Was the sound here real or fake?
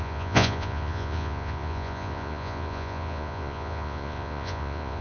fake